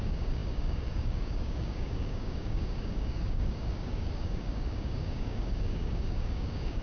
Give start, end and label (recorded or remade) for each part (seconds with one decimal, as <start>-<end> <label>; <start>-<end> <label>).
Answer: 0.0-6.8 remade